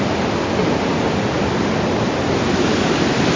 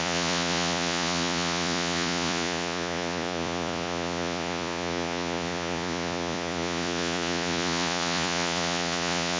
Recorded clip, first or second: first